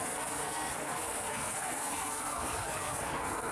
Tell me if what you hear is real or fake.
fake